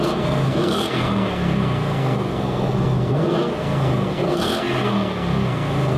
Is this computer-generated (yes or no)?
yes